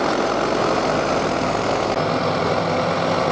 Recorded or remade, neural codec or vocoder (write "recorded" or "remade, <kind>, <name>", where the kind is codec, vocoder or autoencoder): recorded